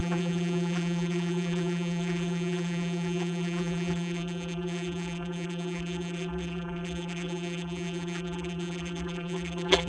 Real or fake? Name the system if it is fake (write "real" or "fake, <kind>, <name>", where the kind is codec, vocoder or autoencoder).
fake, vocoder, BigVGAN v2